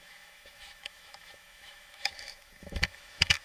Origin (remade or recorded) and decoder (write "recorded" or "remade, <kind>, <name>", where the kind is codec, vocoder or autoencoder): remade, autoencoder, DAC-VAE